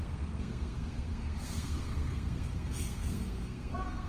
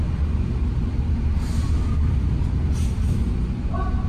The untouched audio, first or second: second